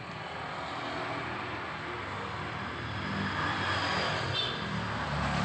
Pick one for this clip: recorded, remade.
recorded